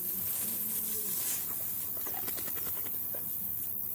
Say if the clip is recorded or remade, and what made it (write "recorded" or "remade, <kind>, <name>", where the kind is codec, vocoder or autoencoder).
recorded